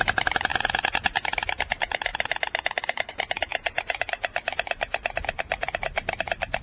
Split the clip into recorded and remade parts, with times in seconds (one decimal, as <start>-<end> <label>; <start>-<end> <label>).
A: 0.0-0.5 remade; 0.5-1.3 recorded; 1.3-6.6 remade